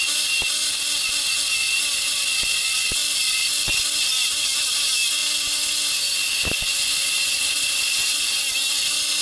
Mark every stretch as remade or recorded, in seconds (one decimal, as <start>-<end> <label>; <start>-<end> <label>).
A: 0.0-3.0 recorded; 3.0-3.5 remade; 3.5-9.2 recorded